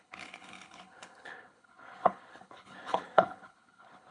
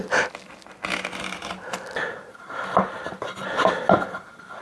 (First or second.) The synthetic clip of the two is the first